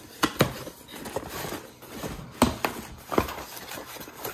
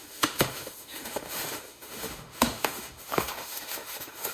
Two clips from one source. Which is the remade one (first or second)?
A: second